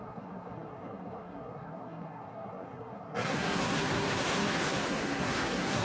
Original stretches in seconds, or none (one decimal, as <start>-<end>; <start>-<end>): none

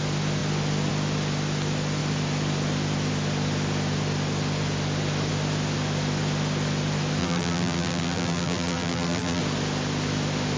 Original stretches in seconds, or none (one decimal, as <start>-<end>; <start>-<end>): 0.0-7.2; 9.4-10.6

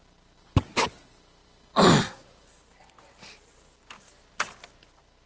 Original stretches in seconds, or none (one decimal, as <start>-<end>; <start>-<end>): 0.0-5.3

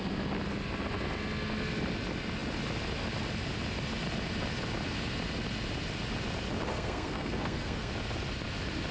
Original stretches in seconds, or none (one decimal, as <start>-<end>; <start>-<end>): 0.0-6.7; 7.9-8.9

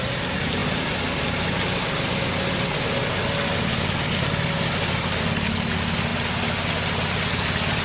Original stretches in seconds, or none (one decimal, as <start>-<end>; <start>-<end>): 0.0-7.8